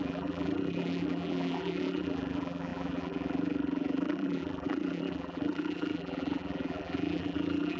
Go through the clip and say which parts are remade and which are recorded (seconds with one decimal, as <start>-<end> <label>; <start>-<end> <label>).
0.0-7.8 remade